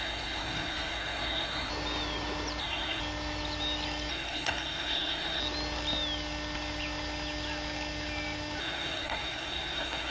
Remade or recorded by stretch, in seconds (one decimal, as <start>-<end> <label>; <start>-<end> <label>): 0.0-1.7 remade; 1.7-2.6 recorded; 2.6-3.0 remade; 3.0-4.1 recorded; 4.1-5.4 remade; 5.4-8.6 recorded; 8.6-10.1 remade